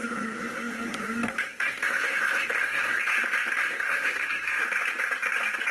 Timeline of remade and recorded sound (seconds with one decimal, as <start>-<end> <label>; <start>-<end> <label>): 0.0-3.0 remade; 3.0-3.6 recorded; 3.6-4.6 remade; 4.6-5.7 recorded